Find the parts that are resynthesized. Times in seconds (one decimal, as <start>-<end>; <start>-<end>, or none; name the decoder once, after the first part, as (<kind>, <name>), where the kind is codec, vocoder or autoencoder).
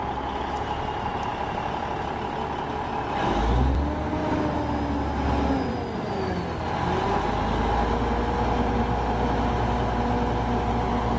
none